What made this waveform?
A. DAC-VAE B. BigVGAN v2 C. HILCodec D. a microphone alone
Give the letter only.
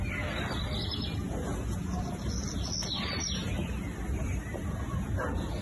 D